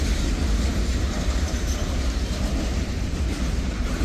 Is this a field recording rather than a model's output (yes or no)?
no